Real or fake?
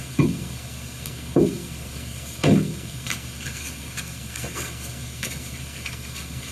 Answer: fake